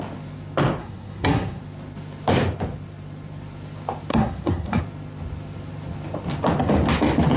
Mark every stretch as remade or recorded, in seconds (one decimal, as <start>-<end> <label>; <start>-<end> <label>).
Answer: 0.0-0.8 recorded; 0.8-1.6 remade; 1.6-4.1 recorded; 4.1-4.8 remade; 4.8-7.4 recorded